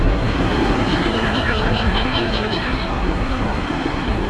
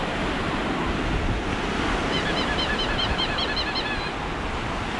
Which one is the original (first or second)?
second